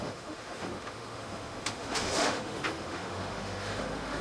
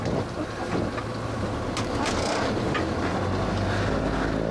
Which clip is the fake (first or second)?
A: first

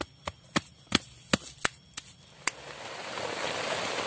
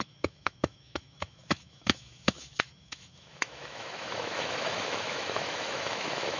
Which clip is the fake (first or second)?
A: second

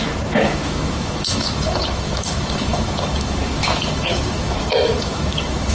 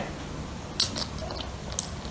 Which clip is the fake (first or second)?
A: first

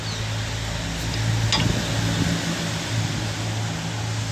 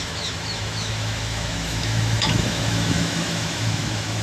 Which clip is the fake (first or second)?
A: second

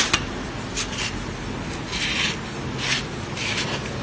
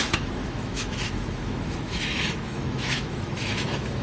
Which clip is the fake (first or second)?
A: second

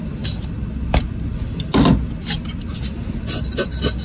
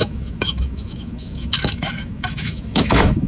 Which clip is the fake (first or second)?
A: second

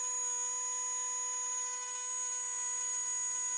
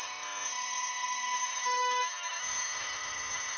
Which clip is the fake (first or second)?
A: second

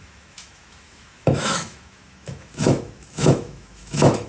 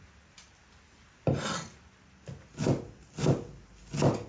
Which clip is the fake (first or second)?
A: first